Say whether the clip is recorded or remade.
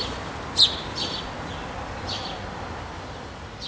recorded